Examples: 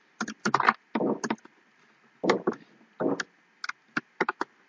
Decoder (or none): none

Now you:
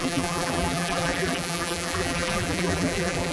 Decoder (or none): vocoder, BigVGAN v2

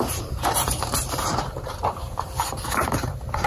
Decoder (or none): vocoder, BigVGAN v2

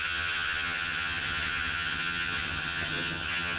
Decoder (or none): vocoder, HiFi-GAN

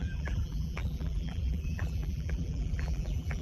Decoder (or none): vocoder, BigVGAN v2